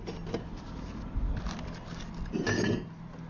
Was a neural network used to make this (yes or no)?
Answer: no